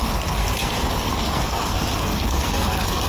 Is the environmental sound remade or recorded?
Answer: remade